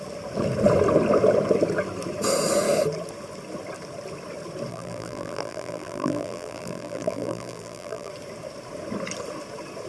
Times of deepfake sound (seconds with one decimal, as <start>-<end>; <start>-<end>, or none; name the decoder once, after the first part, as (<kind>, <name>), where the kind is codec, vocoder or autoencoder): 4.7-8.1 (vocoder, BigVGAN v2)